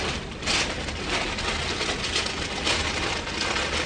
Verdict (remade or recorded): recorded